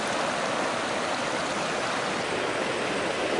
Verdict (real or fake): real